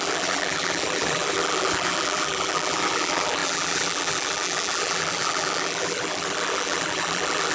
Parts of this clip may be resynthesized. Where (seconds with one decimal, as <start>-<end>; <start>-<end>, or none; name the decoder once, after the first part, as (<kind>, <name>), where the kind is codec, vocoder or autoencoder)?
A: 0.0-7.5 (vocoder, BigVGAN v2)